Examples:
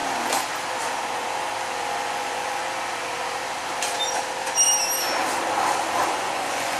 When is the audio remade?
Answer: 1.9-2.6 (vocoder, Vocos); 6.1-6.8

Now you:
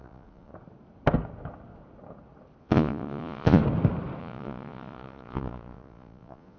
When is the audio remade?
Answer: 0.0-0.5 (vocoder, Vocos); 2.6-3.6; 4.2-6.6